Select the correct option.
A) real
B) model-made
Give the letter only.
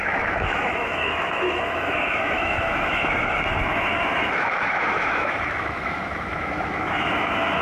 B